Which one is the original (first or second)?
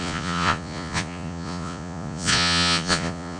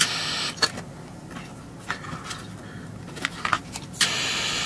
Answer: second